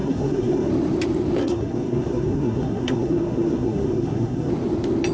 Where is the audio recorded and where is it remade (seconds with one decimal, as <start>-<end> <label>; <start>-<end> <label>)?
0.0-0.7 remade; 0.7-1.4 recorded; 1.4-4.5 remade; 4.5-5.1 recorded